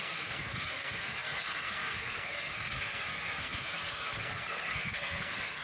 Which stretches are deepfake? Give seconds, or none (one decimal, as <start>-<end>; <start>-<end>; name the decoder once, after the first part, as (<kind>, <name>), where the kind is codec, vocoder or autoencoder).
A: 0.0-5.6 (codec, SNAC)